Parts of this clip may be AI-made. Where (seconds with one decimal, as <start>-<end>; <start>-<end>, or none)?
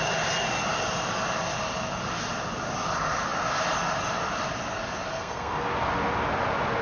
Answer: 5.1-5.6